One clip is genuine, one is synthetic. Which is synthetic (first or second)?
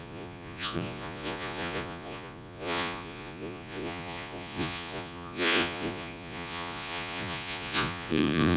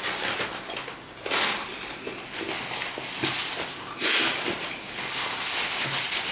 first